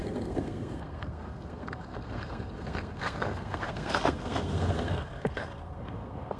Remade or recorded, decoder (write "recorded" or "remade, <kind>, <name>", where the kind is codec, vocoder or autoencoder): remade, codec, SNAC